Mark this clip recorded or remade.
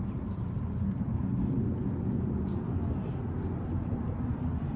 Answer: recorded